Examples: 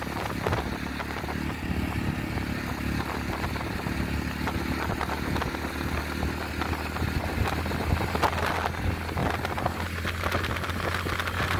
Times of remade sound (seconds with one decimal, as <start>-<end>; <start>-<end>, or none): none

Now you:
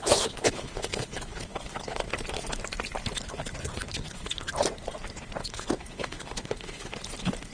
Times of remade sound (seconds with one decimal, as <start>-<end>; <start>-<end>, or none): 0.0-1.8; 3.7-4.5; 5.4-6.9

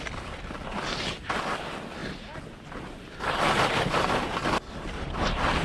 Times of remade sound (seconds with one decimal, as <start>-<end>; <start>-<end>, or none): none